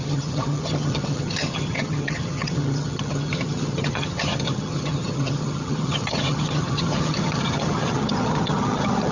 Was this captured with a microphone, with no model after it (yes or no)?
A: no